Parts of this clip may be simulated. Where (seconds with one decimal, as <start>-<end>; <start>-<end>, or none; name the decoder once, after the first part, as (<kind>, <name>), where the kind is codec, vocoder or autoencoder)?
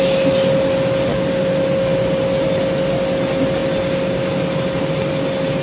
1.9-2.9 (vocoder, BigVGAN v2); 3.6-4.8